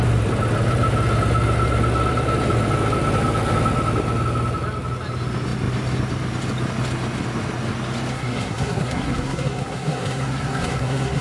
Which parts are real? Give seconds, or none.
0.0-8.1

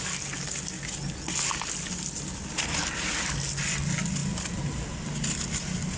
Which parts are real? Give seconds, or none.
0.0-6.0

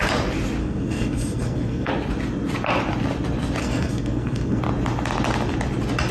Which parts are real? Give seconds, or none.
0.0-0.6; 1.9-3.6; 4.6-6.1

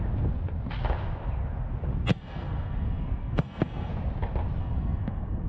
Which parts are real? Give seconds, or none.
0.0-2.1; 3.9-4.6

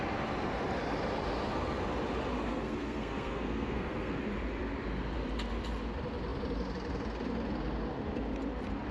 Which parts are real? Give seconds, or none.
0.0-2.5; 4.2-8.9

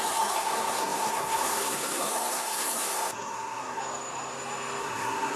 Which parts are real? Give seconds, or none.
3.8-4.8